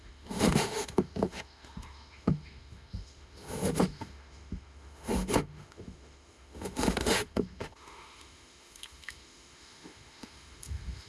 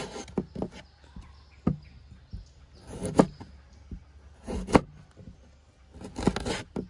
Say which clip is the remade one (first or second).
first